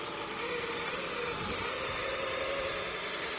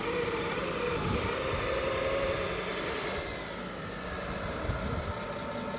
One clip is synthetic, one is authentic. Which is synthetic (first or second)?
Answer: first